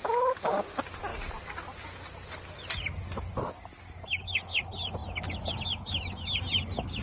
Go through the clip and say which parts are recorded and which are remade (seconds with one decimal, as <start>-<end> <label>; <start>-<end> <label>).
0.0-7.0 recorded